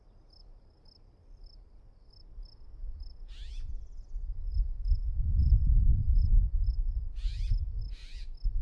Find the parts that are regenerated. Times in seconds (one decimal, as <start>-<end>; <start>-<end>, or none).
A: 5.4-6.4